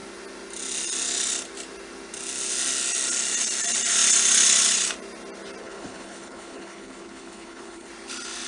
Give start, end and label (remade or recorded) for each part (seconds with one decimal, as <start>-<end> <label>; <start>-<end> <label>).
0.0-5.6 recorded; 5.6-7.9 remade; 7.9-8.5 recorded